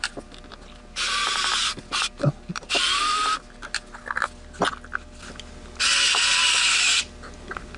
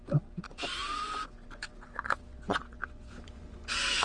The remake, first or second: second